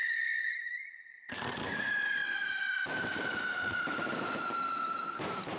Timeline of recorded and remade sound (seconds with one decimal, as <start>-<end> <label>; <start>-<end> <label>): 0.0-2.2 recorded; 2.2-5.6 remade